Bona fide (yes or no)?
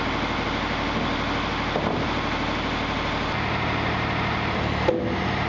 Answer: yes